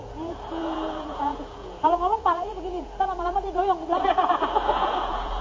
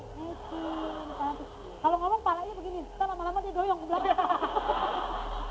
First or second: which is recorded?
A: second